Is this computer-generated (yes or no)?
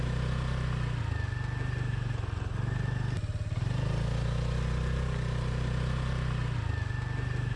no